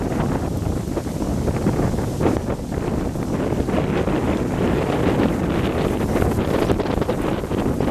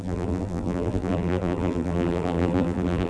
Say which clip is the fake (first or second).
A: second